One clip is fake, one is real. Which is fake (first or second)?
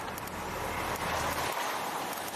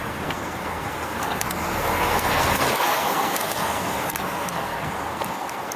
second